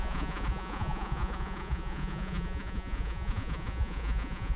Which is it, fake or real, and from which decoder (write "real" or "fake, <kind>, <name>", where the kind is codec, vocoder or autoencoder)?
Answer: fake, vocoder, Vocos